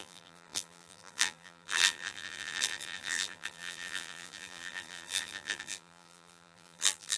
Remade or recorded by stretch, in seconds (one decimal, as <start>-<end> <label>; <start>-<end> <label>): 0.0-7.2 remade